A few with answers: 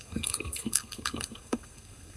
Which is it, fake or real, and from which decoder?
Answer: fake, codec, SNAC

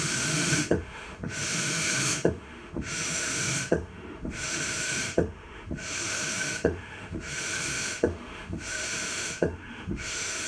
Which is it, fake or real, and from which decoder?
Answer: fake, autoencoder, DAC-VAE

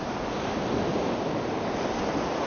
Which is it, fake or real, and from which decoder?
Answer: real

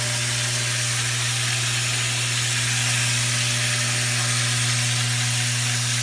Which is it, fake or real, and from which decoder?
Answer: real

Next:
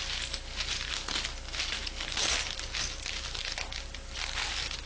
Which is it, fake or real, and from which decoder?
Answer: real